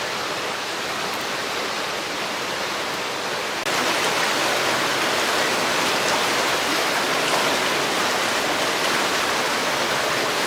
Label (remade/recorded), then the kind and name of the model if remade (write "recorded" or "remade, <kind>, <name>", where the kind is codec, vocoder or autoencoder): recorded